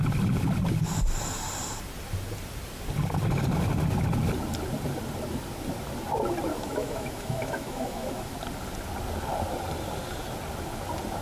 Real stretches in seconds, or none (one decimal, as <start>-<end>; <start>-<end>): 0.0-6.5; 8.3-11.2